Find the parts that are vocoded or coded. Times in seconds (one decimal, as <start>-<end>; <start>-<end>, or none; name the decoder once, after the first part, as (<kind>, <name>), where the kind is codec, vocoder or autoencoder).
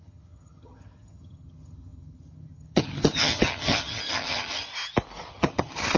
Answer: 0.0-4.7 (vocoder, HiFi-GAN); 5.3-6.0